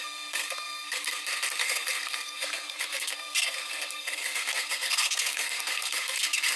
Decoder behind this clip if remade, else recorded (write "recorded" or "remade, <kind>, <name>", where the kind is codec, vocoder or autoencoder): remade, codec, SNAC